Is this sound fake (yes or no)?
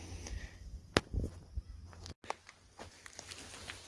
no